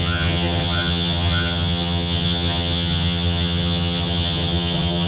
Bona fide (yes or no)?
no